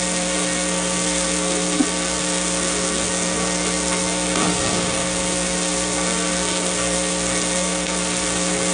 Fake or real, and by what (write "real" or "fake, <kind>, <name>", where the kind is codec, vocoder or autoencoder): fake, codec, SNAC